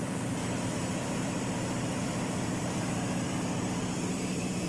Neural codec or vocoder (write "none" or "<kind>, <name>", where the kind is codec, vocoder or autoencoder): vocoder, BigVGAN v2